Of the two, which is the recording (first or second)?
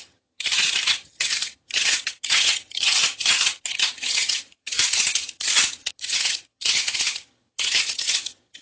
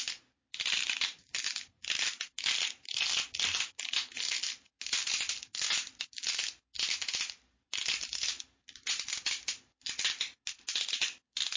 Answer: second